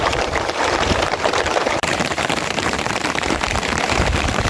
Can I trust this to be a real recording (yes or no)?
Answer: no